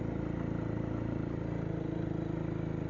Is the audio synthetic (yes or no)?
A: no